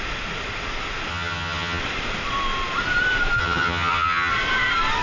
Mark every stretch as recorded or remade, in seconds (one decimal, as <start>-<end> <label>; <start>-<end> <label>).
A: 0.0-1.1 recorded; 1.1-1.8 remade; 1.8-3.4 recorded; 3.4-4.3 remade; 4.3-5.0 recorded